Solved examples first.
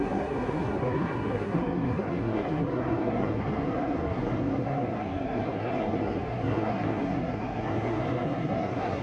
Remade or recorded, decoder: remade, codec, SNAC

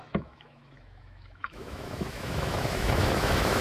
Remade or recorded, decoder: remade, autoencoder, DAC-VAE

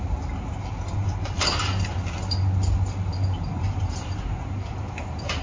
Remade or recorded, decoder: recorded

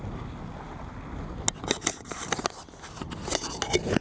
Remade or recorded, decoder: recorded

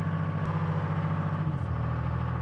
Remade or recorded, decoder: recorded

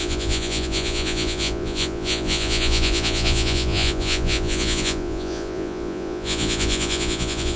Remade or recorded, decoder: remade, vocoder, Vocos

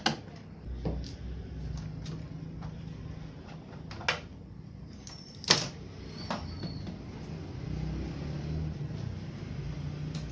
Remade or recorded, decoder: recorded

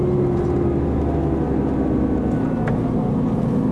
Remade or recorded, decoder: recorded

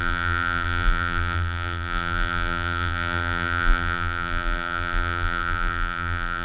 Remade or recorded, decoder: remade, vocoder, BigVGAN v2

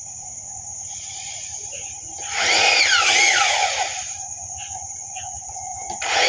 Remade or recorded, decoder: remade, vocoder, Vocos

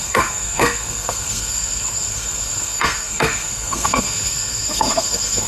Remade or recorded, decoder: remade, codec, SNAC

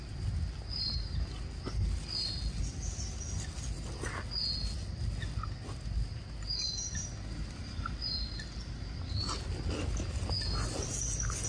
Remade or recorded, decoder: recorded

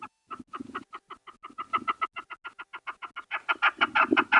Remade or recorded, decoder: recorded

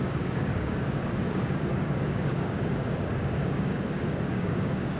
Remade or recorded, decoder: remade, codec, DAC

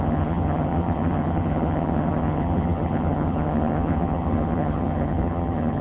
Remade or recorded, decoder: remade, vocoder, HiFi-GAN